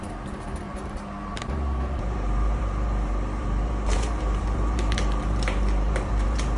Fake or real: fake